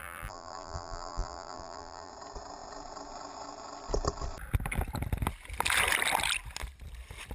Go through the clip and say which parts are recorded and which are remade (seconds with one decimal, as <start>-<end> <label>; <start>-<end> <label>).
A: 0.0-2.1 remade; 2.1-7.3 recorded